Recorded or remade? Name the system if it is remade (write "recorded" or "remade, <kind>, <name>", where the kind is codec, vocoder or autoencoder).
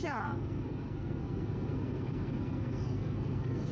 remade, codec, SNAC